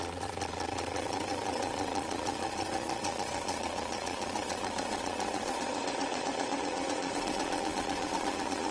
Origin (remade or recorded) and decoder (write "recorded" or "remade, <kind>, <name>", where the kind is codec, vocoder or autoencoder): remade, vocoder, Vocos